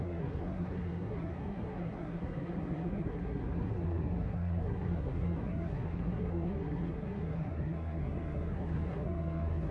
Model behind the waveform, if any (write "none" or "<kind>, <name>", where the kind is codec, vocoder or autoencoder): codec, SNAC